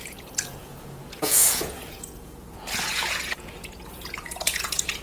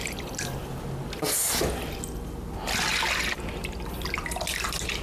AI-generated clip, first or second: first